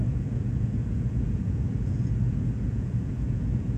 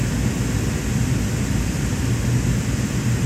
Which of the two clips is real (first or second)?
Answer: second